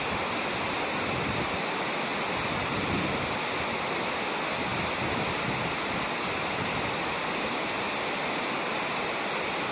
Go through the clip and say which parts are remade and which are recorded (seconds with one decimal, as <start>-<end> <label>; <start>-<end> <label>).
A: 0.0-2.1 recorded; 2.1-3.4 remade; 3.4-4.7 recorded; 4.7-5.6 remade; 5.6-9.7 recorded